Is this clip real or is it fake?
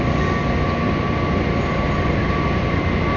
real